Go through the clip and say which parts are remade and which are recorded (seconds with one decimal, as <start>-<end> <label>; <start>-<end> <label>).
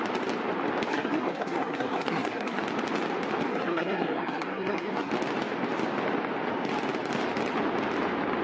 0.0-0.9 recorded; 0.9-2.6 remade; 2.6-3.5 recorded; 3.5-5.1 remade; 5.1-8.4 recorded